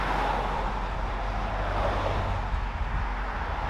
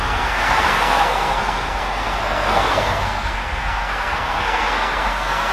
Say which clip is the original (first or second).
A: first